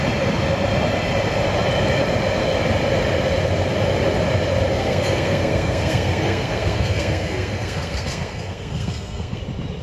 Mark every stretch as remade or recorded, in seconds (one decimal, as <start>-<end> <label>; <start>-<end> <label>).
0.0-4.7 recorded; 4.7-9.4 remade; 9.4-9.8 recorded